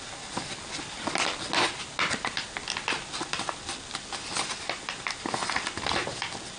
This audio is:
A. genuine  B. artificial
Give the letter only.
A